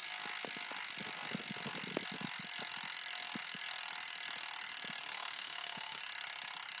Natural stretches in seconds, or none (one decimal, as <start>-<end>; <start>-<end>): 0.0-5.1; 6.0-6.8